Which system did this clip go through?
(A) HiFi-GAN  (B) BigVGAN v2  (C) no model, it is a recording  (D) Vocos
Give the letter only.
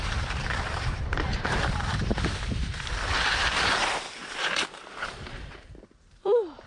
B